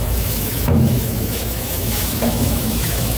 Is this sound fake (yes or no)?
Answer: yes